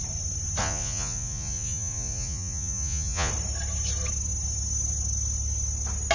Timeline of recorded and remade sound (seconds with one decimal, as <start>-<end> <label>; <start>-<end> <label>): 0.0-0.6 recorded; 0.6-3.3 remade; 3.3-6.1 recorded